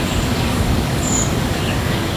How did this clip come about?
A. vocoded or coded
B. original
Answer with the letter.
A